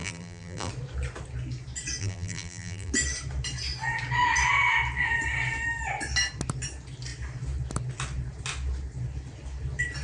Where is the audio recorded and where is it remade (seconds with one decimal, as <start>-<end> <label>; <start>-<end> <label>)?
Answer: 0.0-0.7 remade; 0.7-2.0 recorded; 2.0-2.9 remade; 2.9-10.0 recorded